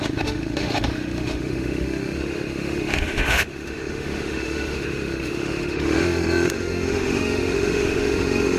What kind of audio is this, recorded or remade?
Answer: remade